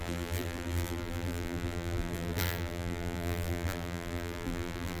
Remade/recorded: remade